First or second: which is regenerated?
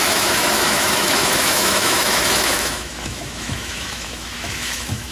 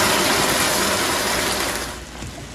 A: first